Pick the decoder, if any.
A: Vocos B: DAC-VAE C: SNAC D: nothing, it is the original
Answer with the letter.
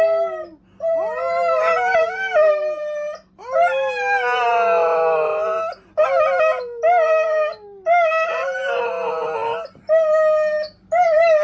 D